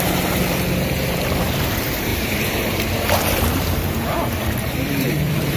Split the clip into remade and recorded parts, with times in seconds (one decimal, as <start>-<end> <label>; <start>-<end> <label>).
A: 0.0-5.6 remade